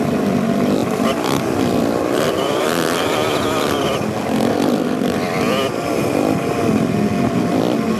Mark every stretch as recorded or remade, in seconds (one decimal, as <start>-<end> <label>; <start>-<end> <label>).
0.0-0.8 recorded; 0.8-2.6 remade; 2.6-8.0 recorded